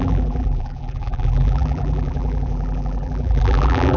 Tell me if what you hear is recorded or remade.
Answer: remade